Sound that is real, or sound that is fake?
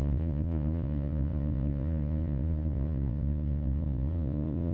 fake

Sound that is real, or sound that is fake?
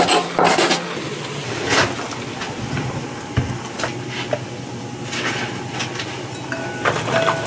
real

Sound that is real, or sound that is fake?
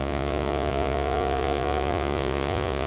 fake